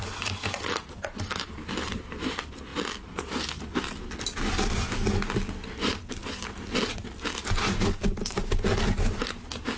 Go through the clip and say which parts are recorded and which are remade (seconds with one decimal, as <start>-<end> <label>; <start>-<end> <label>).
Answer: 0.0-2.7 recorded; 2.7-4.8 remade; 4.8-9.8 recorded